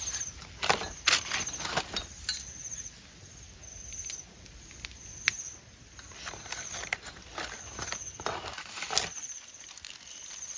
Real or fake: real